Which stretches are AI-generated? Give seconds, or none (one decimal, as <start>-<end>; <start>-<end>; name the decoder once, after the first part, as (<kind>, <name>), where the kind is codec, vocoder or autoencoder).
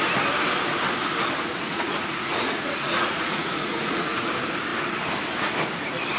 1.7-4.3 (vocoder, Vocos)